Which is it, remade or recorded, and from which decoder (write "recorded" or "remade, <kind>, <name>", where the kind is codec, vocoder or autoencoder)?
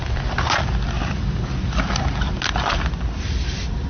recorded